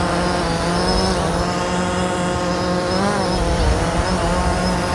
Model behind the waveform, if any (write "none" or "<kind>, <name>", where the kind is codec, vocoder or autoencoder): none